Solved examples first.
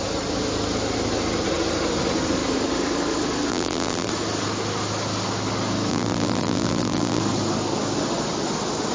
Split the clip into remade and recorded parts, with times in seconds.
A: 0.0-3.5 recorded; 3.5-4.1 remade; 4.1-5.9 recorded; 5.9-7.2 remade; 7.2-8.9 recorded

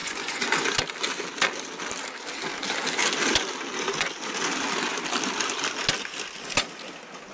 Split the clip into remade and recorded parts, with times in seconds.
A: 0.0-0.7 remade; 0.7-7.3 recorded

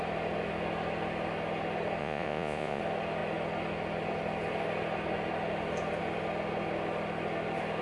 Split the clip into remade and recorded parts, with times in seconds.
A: 0.0-2.0 recorded; 2.0-2.8 remade; 2.8-7.8 recorded

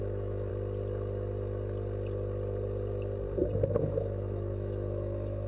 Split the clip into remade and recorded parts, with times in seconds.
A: 0.0-0.5 remade; 0.5-3.8 recorded; 3.8-5.5 remade

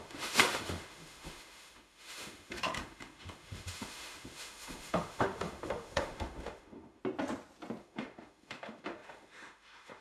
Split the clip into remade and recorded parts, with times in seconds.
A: 0.0-7.0 remade; 7.0-7.8 recorded; 7.8-10.0 remade

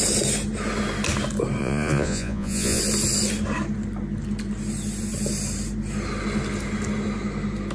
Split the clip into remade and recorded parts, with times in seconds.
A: 0.0-1.6 recorded; 1.6-2.8 remade; 2.8-7.7 recorded

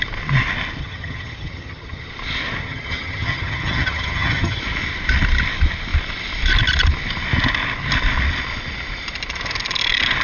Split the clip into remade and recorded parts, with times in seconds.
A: 0.0-0.8 recorded; 0.8-2.1 remade; 2.1-2.6 recorded; 2.6-4.6 remade; 4.6-10.2 recorded

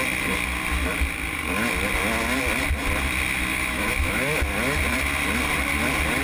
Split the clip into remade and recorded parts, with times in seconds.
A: 0.0-3.5 recorded; 3.5-4.4 remade; 4.4-6.2 recorded